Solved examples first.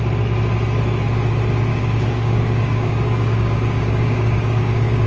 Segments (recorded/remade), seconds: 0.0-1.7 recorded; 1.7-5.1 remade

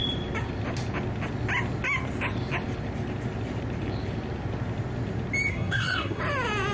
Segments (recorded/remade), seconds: 0.0-5.5 recorded; 5.5-6.2 remade; 6.2-6.7 recorded

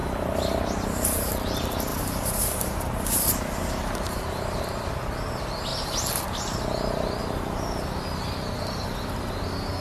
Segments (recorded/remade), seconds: 0.0-1.3 remade; 1.3-1.9 recorded; 1.9-4.6 remade; 4.6-7.2 recorded; 7.2-8.3 remade; 8.3-9.8 recorded

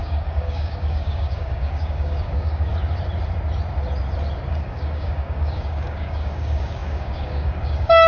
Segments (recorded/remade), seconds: 0.0-2.7 remade; 2.7-4.5 recorded; 4.5-8.1 remade